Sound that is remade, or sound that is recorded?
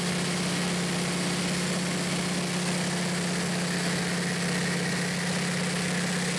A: recorded